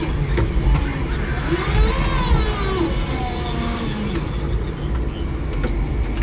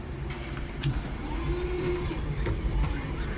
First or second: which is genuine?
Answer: first